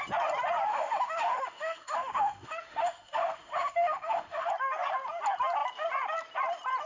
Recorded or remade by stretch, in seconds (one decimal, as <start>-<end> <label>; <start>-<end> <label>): 0.0-0.7 recorded; 0.7-4.5 remade; 4.5-6.9 recorded